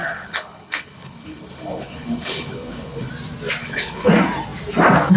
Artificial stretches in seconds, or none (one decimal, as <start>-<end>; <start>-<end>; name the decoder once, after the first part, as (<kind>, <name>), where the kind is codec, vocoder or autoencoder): 0.0-3.1 (codec, HILCodec); 3.6-4.1

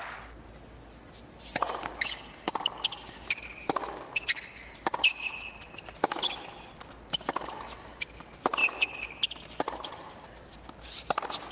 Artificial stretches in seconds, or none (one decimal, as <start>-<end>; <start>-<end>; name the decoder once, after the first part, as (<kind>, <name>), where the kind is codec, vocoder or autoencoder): none